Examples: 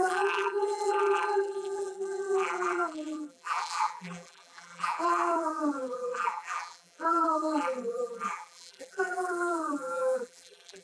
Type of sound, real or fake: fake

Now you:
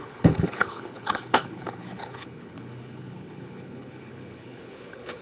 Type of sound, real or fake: fake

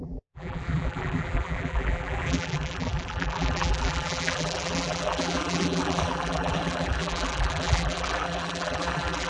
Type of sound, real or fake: fake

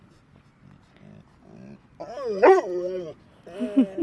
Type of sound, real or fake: real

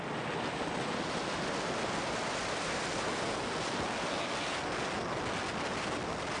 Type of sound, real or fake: real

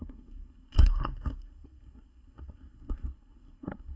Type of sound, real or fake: fake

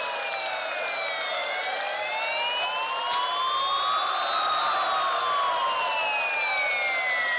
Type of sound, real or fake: real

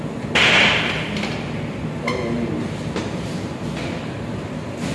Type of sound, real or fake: real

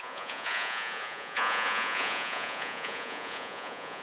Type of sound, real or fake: fake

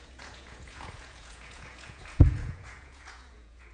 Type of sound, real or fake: fake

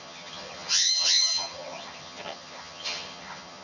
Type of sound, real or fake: fake